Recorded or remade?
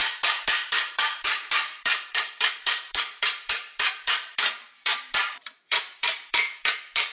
remade